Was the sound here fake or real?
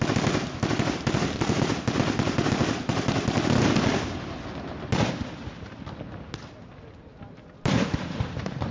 real